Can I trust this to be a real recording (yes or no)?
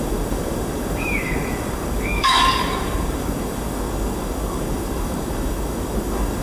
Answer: no